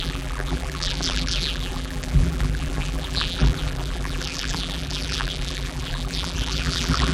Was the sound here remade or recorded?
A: remade